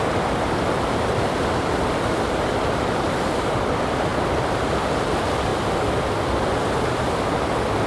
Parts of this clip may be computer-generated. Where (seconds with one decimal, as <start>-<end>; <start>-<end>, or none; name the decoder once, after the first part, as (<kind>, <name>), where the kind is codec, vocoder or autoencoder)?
none